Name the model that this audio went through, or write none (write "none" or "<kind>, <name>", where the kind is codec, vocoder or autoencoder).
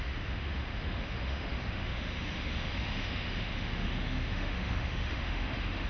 autoencoder, DAC-VAE